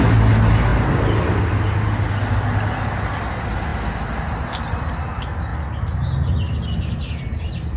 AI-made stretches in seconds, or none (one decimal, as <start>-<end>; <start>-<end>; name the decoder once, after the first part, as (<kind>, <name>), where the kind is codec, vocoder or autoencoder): none